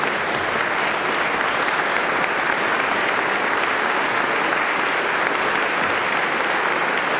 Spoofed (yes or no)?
no